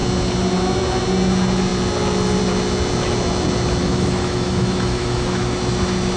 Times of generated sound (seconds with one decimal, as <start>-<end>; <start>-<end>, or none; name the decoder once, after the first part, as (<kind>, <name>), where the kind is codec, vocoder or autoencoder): 3.8-5.6 (autoencoder, DAC-VAE)